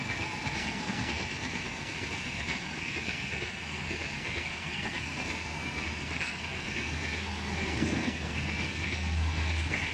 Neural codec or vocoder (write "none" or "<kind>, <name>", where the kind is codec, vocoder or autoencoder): codec, SNAC